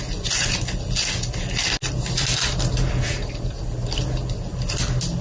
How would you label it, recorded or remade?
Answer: recorded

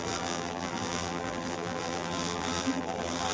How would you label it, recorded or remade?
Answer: remade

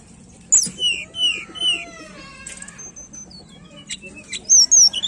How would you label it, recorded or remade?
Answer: recorded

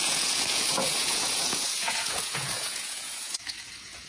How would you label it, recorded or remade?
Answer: remade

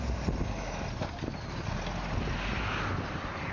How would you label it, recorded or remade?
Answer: recorded